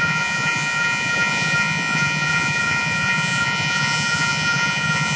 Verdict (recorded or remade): remade